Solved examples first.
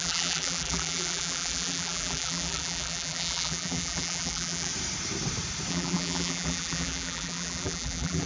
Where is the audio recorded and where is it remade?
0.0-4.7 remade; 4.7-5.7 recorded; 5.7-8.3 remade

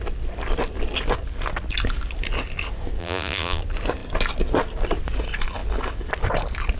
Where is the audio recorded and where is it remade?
0.0-3.0 recorded; 3.0-3.6 remade; 3.6-6.8 recorded

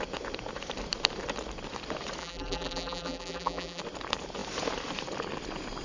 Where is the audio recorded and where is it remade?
0.0-2.2 recorded; 2.2-3.8 remade; 3.8-5.8 recorded

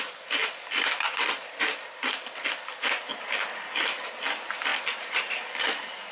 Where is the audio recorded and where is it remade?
0.0-6.1 remade

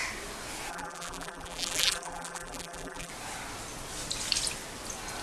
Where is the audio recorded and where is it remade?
0.0-0.7 recorded; 0.7-3.1 remade; 3.1-5.2 recorded